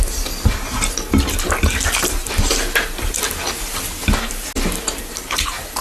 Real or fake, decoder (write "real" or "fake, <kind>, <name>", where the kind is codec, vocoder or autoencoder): real